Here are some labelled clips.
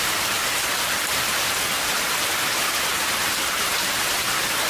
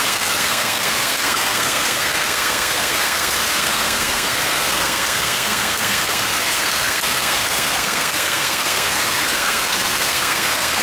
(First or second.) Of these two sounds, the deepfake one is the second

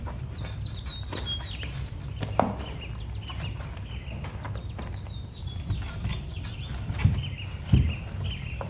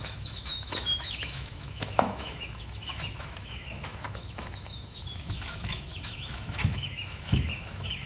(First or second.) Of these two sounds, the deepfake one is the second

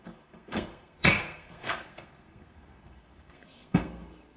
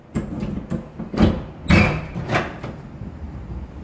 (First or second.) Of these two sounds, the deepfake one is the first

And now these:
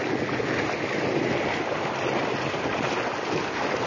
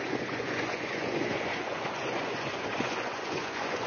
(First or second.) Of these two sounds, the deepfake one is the second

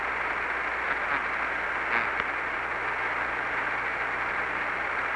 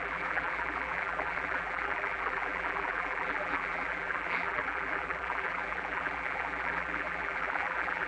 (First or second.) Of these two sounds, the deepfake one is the second